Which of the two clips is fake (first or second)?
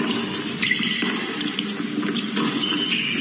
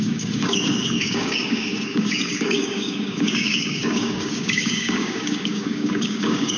second